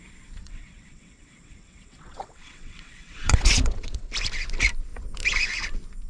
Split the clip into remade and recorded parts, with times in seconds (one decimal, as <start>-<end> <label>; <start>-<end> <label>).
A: 0.0-0.4 recorded; 0.4-4.1 remade; 4.1-6.1 recorded